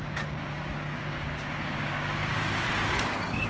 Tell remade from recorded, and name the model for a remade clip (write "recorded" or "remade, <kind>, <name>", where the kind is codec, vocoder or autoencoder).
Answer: remade, codec, DAC